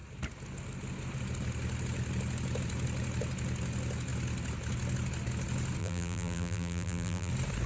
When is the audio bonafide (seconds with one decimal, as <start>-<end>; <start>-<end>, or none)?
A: 0.0-5.8; 7.3-7.7